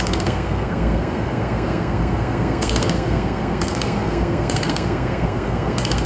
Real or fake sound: fake